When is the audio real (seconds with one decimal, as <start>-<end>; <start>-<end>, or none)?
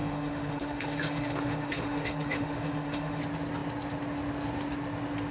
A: 3.2-5.3